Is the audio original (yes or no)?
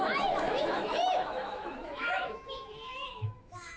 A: no